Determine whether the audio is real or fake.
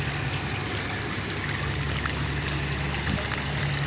real